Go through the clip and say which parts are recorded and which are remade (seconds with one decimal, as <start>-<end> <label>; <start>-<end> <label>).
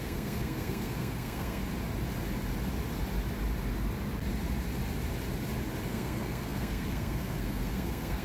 0.0-1.6 remade; 1.6-5.9 recorded; 5.9-8.2 remade